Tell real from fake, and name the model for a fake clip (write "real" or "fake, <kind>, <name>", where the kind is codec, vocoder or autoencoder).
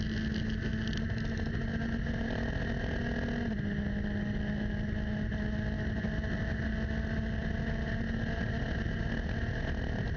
real